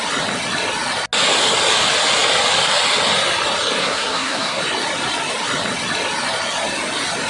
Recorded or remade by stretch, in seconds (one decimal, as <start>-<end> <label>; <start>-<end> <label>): 0.0-3.8 recorded; 3.8-4.6 remade; 4.6-7.3 recorded